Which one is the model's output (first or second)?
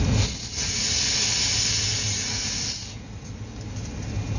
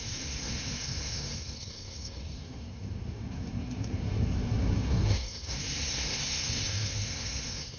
second